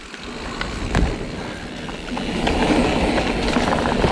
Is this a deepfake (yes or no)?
no